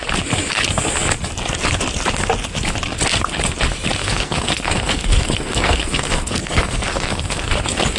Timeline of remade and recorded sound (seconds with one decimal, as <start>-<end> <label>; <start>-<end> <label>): 0.0-4.0 recorded; 4.0-7.5 remade; 7.5-8.0 recorded